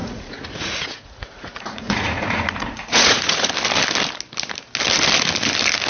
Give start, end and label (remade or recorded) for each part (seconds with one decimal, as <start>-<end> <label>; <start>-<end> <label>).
0.0-3.5 remade; 3.5-5.9 recorded